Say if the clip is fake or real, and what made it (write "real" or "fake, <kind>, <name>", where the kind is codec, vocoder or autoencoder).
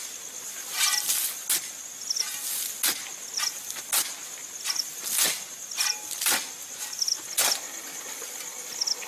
real